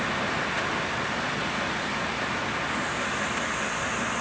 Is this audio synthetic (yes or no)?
no